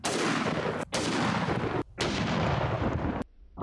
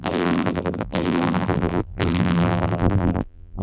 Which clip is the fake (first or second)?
second